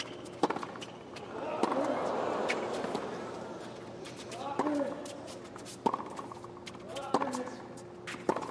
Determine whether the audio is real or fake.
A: real